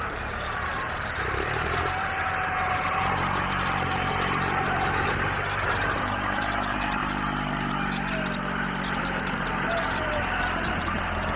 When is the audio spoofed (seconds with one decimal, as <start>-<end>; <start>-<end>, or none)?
0.0-7.0; 9.0-11.4